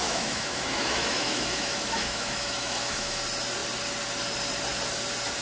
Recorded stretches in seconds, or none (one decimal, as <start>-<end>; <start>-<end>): 3.2-5.4